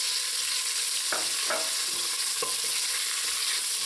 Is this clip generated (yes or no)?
no